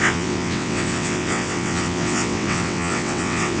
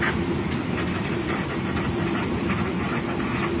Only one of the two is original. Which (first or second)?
second